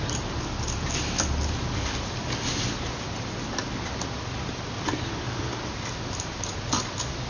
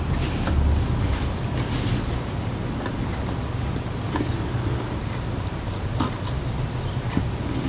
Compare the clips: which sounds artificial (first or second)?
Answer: second